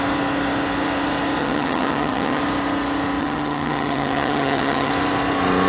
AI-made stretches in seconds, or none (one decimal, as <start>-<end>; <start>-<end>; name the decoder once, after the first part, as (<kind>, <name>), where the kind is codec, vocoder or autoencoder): 1.4-2.4 (vocoder, HiFi-GAN); 3.2-4.9